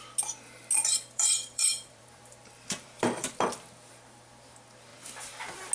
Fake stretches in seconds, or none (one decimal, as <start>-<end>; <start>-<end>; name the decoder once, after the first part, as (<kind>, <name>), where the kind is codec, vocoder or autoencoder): 0.8-3.3 (vocoder, BigVGAN v2); 4.9-5.7